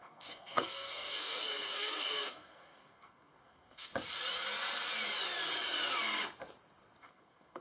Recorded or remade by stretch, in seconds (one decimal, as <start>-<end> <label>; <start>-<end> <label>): 0.0-3.9 remade; 3.9-7.0 recorded; 7.0-7.6 remade